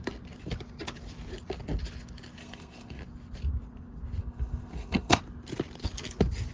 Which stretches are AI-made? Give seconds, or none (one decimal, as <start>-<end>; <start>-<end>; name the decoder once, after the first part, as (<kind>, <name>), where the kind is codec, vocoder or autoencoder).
2.4-3.0 (codec, SNAC); 4.2-5.2